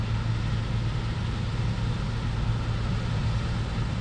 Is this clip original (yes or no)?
yes